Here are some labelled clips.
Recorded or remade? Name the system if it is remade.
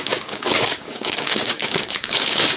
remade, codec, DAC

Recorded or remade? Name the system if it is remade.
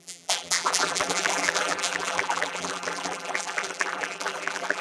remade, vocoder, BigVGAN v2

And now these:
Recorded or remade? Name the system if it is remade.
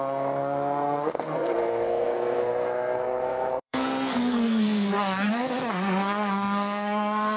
remade, codec, SNAC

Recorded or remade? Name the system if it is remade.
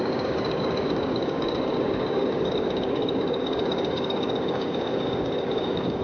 remade, codec, DAC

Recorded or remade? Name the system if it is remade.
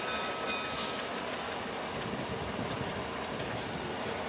recorded